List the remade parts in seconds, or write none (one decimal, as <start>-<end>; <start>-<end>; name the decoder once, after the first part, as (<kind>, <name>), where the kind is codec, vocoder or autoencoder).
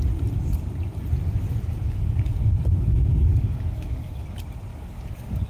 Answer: 1.7-4.3 (codec, DAC); 4.7-5.5